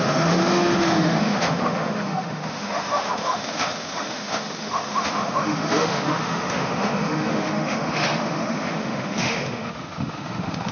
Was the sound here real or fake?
fake